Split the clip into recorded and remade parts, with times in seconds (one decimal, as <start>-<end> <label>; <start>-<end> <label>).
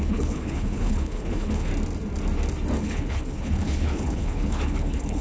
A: 0.0-1.7 remade; 1.7-2.8 recorded; 2.8-5.2 remade